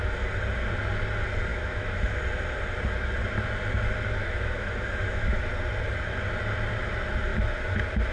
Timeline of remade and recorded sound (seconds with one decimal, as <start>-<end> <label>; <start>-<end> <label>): 0.0-1.5 recorded; 1.5-2.2 remade; 2.2-4.2 recorded; 4.2-5.5 remade; 5.5-8.1 recorded